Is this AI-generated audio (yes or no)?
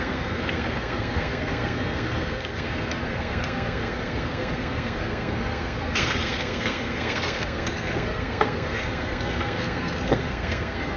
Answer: yes